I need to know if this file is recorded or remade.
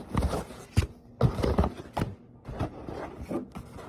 recorded